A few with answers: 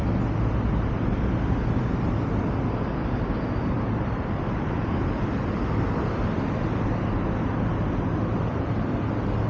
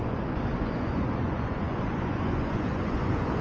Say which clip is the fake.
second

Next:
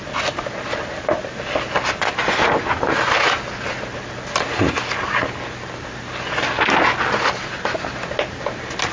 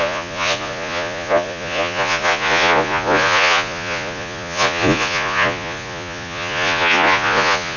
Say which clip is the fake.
second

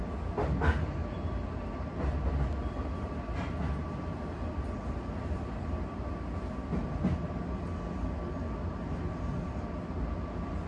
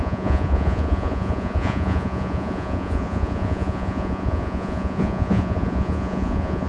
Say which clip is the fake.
second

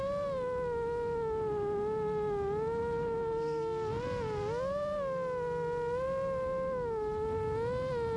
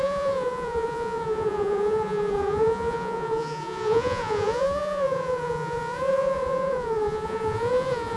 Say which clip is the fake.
second